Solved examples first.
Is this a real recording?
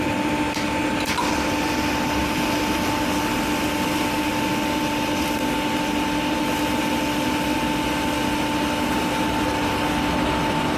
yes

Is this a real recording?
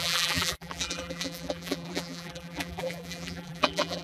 no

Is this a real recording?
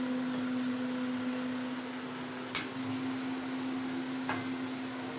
yes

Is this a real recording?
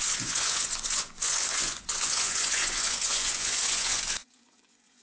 no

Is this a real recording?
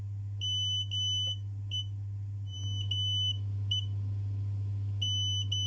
yes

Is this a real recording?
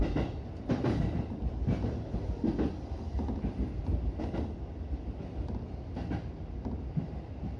yes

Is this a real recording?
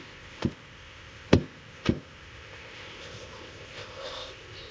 no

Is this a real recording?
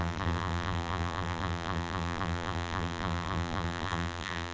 no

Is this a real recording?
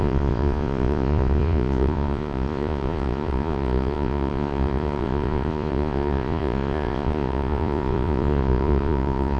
no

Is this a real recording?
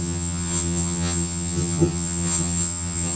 no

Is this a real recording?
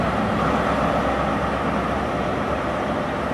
yes